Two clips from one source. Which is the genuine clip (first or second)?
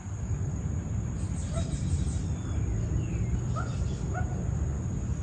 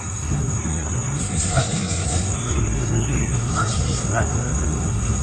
first